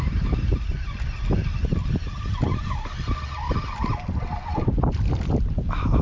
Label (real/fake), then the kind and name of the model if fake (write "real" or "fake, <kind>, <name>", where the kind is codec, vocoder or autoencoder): real